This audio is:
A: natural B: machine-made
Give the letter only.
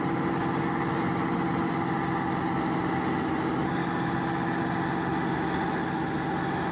A